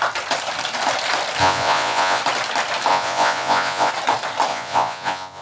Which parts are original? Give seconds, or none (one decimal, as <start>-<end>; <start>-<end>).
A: 0.0-1.4; 2.2-2.9; 3.9-4.5